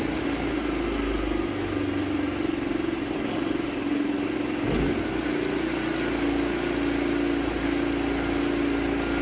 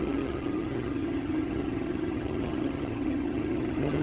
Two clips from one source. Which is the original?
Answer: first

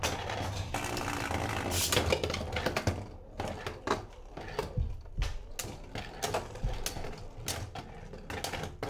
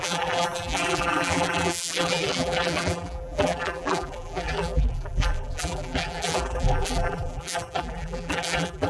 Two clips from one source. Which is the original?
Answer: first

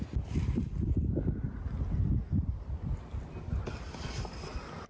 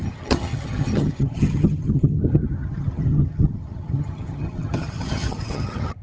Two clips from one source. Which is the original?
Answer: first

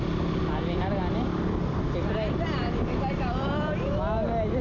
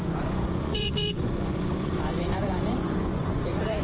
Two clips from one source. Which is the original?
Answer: first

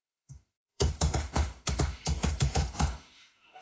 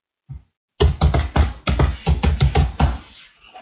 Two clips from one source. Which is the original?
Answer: second